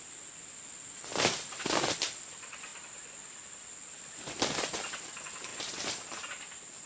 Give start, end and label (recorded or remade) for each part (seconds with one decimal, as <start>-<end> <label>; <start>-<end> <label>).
0.0-5.5 recorded; 5.5-6.9 remade